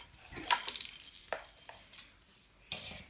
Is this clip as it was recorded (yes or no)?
no